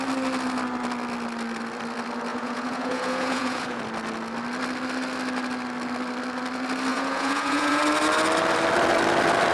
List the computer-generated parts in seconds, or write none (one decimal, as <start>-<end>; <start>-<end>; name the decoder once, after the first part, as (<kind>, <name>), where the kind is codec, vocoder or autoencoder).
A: 2.3-3.8 (vocoder, Vocos); 6.9-7.8

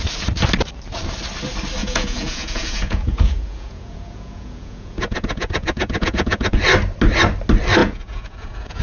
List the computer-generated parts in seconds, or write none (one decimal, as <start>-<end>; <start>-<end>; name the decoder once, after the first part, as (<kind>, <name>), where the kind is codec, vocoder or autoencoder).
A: 1.8-6.6 (vocoder, Vocos); 7.8-8.8